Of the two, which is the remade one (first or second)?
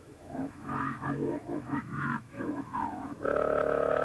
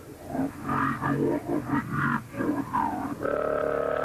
first